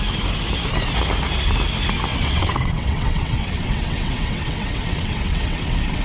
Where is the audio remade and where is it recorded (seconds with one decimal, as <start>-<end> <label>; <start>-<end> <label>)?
0.0-2.1 recorded; 2.1-6.0 remade